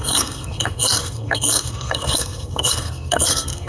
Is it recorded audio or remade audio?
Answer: remade